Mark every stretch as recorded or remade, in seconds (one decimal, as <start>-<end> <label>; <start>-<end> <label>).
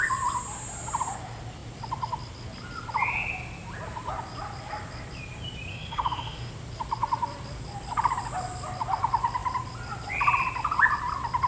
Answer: 0.0-5.7 recorded; 5.7-6.5 remade; 6.5-11.5 recorded